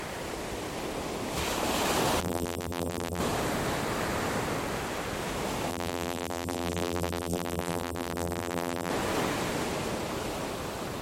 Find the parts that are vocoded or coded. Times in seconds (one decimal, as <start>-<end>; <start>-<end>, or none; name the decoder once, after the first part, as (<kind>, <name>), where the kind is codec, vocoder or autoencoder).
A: 2.2-3.2 (vocoder, BigVGAN v2); 5.7-8.9